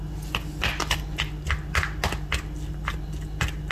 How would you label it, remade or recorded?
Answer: recorded